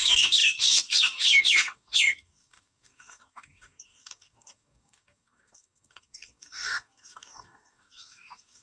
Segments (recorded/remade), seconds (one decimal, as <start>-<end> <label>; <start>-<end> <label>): 0.0-8.6 remade